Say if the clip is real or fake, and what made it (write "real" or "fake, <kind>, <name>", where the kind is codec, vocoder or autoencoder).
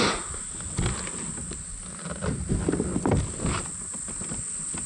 real